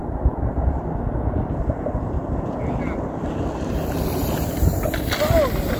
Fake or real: real